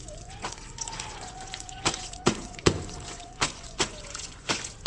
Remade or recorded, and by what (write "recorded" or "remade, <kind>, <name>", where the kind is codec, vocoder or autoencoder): remade, vocoder, Vocos